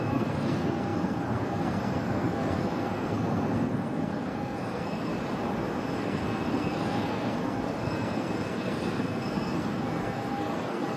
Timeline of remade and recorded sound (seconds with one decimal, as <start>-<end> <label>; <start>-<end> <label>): 0.0-5.1 remade; 5.1-6.0 recorded; 6.0-11.0 remade